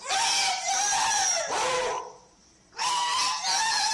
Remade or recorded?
remade